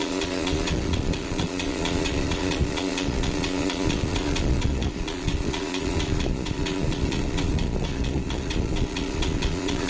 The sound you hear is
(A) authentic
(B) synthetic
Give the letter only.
B